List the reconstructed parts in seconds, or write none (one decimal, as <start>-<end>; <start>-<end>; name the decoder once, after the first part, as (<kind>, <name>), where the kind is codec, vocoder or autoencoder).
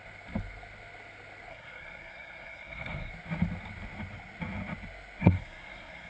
1.5-3.1 (codec, SNAC); 5.2-6.1